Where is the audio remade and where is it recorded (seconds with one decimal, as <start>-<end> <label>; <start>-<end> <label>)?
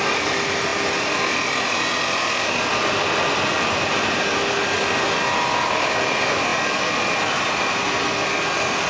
0.0-0.7 recorded; 0.7-4.6 remade; 4.6-6.5 recorded; 6.5-7.4 remade; 7.4-8.9 recorded